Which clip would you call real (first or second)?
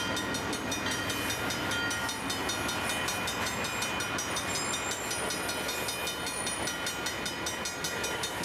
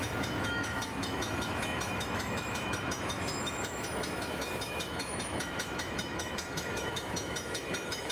first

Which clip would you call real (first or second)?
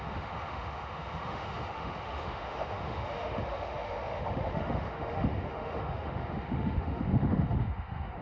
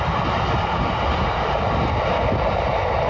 second